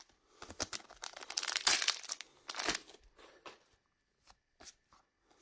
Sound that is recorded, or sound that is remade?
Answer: recorded